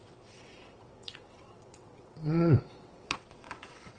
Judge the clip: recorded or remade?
remade